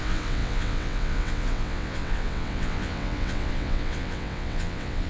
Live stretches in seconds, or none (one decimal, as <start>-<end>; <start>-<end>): none